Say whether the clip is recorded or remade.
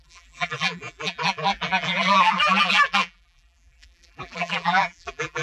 remade